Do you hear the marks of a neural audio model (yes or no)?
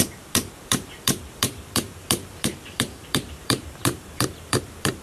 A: yes